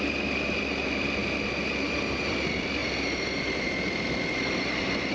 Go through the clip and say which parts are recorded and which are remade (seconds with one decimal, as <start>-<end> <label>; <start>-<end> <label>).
0.0-2.8 remade; 2.8-3.4 recorded; 3.4-5.1 remade